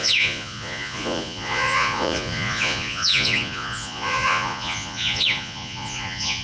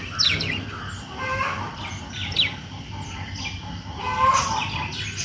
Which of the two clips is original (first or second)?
second